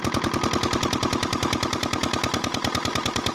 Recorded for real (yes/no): yes